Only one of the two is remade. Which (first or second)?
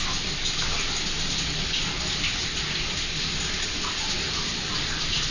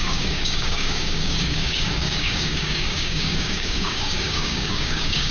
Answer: second